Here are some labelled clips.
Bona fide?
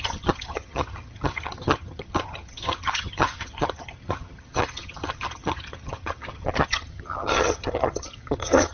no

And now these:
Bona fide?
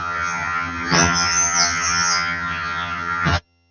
no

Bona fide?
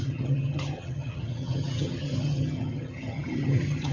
no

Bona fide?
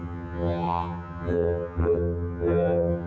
no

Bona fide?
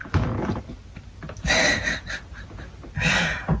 yes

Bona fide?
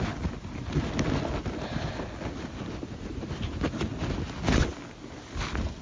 yes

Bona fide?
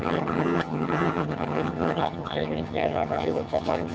no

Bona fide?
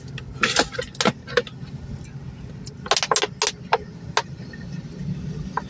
yes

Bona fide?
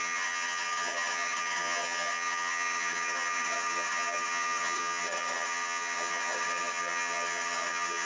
no